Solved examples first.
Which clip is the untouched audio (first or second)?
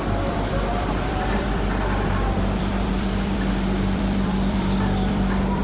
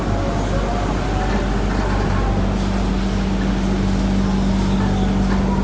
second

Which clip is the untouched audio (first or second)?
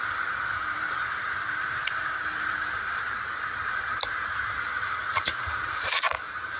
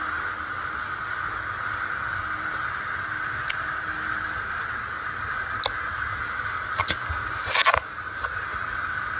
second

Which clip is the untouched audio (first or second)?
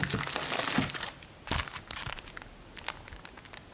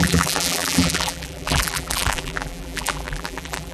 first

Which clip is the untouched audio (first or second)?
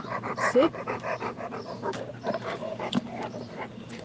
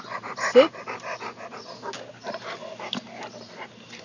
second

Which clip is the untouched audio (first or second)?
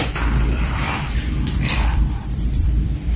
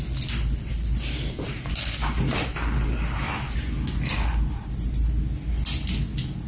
second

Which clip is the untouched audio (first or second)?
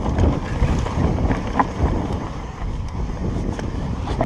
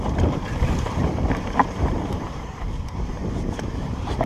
first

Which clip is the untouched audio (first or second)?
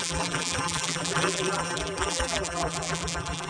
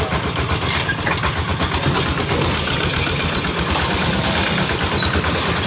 second